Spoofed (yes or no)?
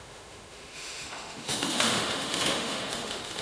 yes